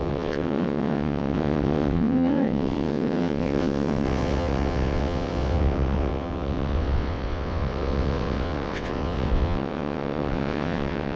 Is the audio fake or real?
fake